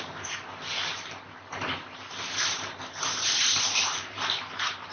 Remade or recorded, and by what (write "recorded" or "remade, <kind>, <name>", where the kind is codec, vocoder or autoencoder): remade, vocoder, BigVGAN v2